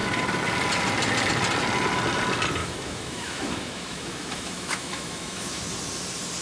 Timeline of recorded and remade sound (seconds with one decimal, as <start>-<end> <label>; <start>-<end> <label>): 0.0-2.6 recorded; 2.6-5.6 remade; 5.6-6.4 recorded